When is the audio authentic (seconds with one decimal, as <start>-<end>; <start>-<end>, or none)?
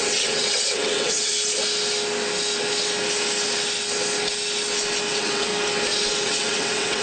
1.3-5.1; 5.5-6.1